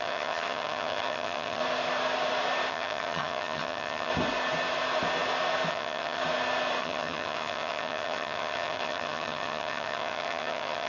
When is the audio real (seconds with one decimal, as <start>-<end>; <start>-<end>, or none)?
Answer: 1.6-2.7; 4.1-5.7; 6.2-6.8